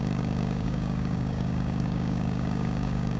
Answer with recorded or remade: remade